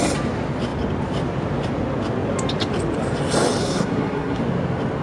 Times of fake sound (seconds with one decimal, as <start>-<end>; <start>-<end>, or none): 3.6-4.4